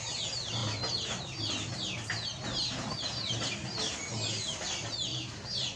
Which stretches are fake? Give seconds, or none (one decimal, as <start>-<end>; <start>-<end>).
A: 5.1-5.8